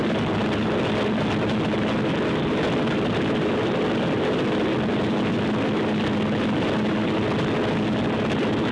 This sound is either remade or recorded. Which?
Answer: recorded